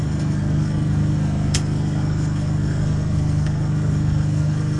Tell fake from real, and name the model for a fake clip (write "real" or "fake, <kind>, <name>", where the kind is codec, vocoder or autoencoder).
fake, codec, SNAC